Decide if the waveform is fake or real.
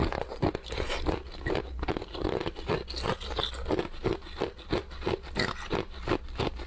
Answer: real